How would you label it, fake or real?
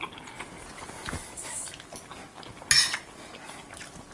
real